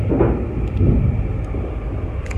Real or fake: real